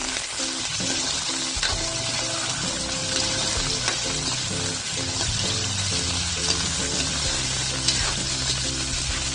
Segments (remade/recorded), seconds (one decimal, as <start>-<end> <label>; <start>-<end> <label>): 0.0-9.3 recorded